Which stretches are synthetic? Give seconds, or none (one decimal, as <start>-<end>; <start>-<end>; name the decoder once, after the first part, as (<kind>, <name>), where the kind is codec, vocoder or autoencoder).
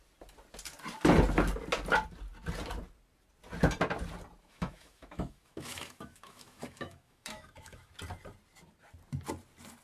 4.4-7.9 (autoencoder, DAC-VAE)